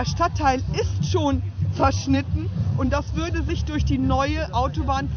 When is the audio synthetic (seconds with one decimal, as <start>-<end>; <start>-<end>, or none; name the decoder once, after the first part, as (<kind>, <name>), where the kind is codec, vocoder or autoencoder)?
1.8-3.5 (vocoder, BigVGAN v2)